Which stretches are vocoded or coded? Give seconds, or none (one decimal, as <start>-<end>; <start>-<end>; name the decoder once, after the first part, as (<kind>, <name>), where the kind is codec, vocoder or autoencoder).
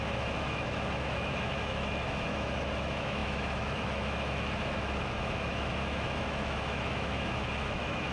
0.0-8.1 (autoencoder, DAC-VAE)